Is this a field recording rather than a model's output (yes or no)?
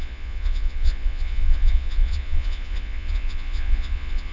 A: no